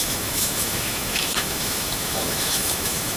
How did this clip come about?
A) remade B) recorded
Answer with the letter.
A